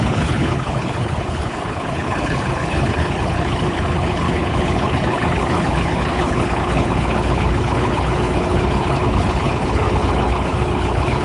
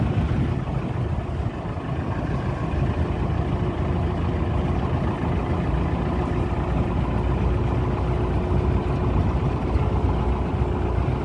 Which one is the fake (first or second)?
first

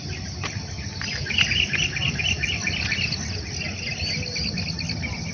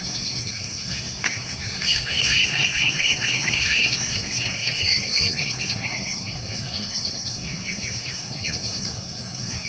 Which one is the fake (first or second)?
second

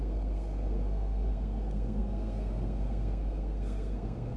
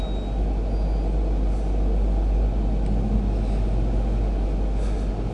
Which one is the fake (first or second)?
first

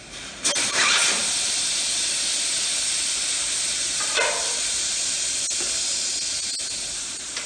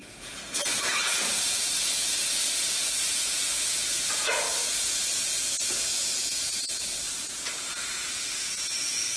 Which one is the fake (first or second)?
second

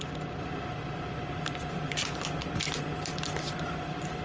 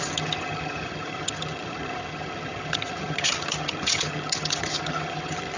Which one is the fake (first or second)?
second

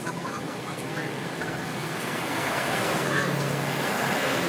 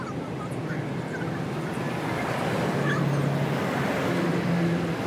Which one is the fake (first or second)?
first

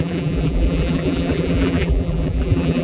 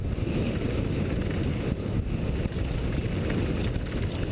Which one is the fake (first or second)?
first